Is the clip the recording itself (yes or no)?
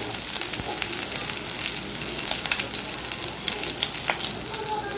yes